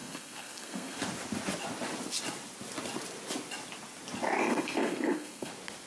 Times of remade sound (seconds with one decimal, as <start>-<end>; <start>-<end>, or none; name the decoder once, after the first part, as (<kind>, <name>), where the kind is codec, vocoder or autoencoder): 0.0-1.0 (codec, SNAC); 4.4-5.5